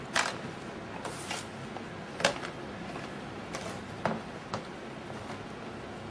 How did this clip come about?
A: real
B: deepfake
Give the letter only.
A